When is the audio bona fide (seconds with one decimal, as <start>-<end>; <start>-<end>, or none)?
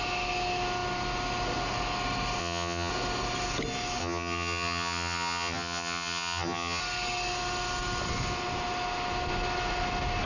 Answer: 0.0-2.4; 2.9-4.0; 6.8-10.3